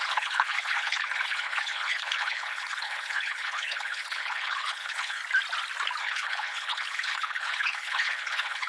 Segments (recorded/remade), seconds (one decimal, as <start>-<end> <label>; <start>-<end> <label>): 0.0-5.2 remade; 5.2-6.0 recorded; 6.0-8.7 remade